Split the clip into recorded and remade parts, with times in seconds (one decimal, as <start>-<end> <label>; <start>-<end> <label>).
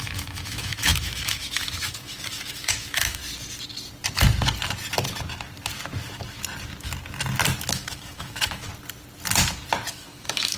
0.0-3.2 remade; 3.2-7.7 recorded; 7.7-8.7 remade; 8.7-9.9 recorded; 9.9-10.6 remade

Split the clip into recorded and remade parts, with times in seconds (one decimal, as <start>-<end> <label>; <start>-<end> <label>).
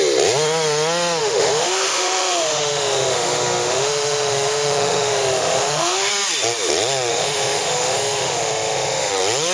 0.0-1.2 recorded; 1.2-6.1 remade; 6.1-7.1 recorded; 7.1-9.1 remade; 9.1-9.5 recorded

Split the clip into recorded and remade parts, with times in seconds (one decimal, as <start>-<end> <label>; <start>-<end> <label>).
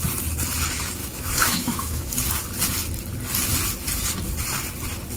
0.0-1.0 recorded; 1.0-2.1 remade; 2.1-5.2 recorded